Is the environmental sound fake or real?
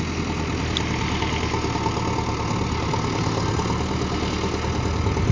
real